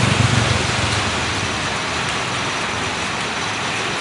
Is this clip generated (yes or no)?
no